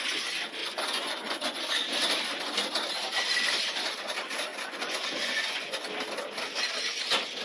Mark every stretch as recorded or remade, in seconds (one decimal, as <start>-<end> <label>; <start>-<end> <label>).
0.0-0.6 recorded; 0.6-1.6 remade; 1.6-4.5 recorded; 4.5-5.8 remade; 5.8-7.4 recorded